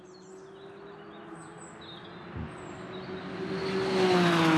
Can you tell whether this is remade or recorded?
recorded